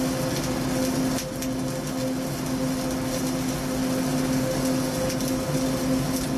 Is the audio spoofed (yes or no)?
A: no